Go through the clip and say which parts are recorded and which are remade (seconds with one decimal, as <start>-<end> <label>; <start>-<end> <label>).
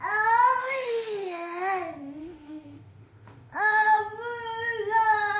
0.0-0.6 recorded; 0.6-1.8 remade; 1.8-2.2 recorded; 2.2-4.0 remade; 4.0-5.4 recorded